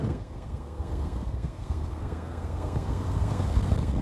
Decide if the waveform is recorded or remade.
remade